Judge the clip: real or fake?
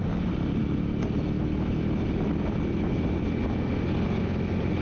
real